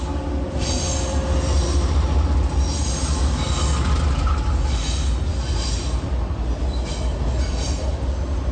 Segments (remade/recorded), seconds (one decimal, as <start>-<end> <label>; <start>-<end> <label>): 0.0-8.5 recorded